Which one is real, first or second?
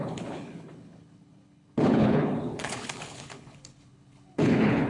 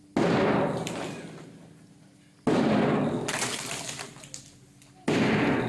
second